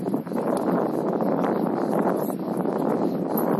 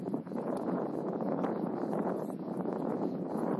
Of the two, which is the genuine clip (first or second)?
first